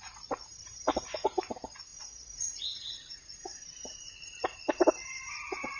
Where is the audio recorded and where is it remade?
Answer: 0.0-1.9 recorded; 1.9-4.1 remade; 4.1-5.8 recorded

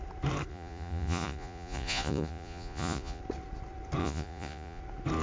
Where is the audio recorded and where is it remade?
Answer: 0.0-0.5 recorded; 0.5-3.2 remade; 3.2-4.0 recorded; 4.0-4.8 remade; 4.8-5.2 recorded

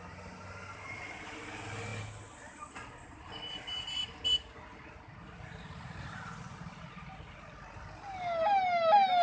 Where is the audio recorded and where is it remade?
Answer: 0.0-9.2 recorded

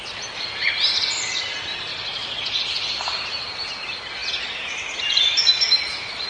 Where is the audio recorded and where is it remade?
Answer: 0.0-1.9 recorded; 1.9-2.9 remade; 2.9-6.3 recorded

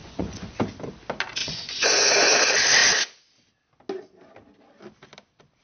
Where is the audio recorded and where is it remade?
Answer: 0.0-0.6 remade; 0.6-1.4 recorded; 1.4-2.4 remade; 2.4-5.6 recorded

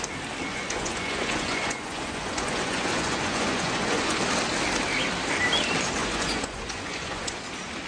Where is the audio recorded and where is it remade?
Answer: 0.0-0.5 recorded; 0.5-4.2 remade; 4.2-6.0 recorded; 6.0-7.4 remade; 7.4-7.9 recorded